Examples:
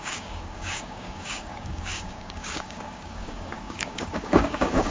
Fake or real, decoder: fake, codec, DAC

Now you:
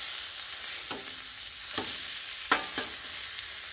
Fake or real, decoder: real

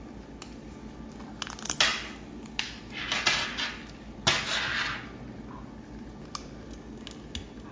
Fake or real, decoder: real